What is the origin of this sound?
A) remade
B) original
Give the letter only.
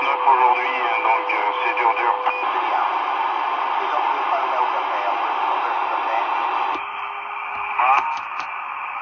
B